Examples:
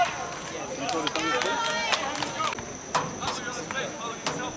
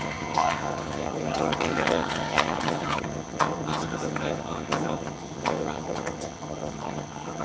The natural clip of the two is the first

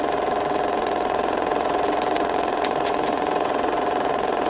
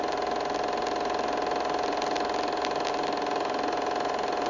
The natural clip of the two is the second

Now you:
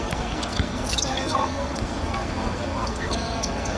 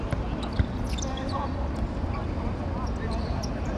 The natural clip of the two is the second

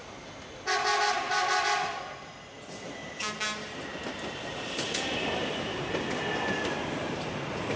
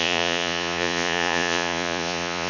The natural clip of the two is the first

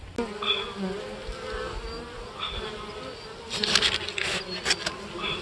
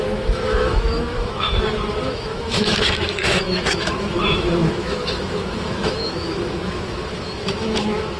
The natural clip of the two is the first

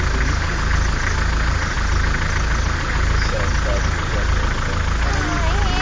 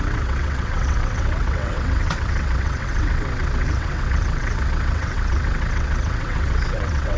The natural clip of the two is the first